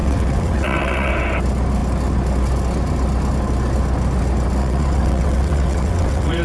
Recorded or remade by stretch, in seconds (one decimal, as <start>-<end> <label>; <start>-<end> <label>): 0.0-1.1 remade; 1.1-4.6 recorded; 4.6-6.4 remade